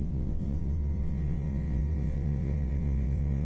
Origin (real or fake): fake